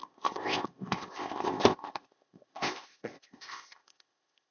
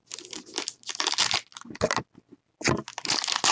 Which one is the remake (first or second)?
first